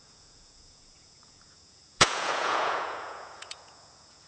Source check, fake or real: fake